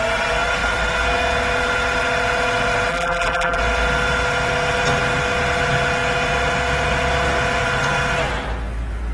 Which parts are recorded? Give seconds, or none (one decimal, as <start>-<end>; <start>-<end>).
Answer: 0.0-2.9; 3.6-9.1